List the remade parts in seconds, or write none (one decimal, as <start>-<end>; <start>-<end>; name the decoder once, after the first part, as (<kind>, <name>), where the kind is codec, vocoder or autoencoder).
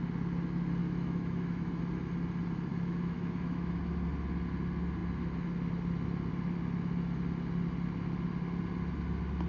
0.8-1.8 (autoencoder, DAC-VAE); 2.7-3.8